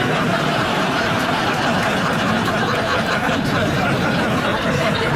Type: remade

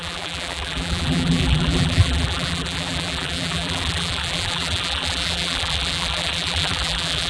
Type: remade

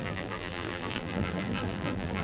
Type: remade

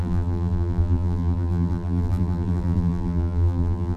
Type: remade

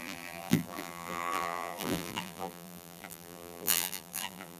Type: remade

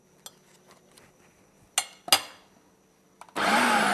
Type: recorded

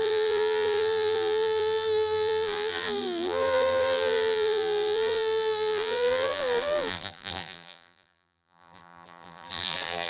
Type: remade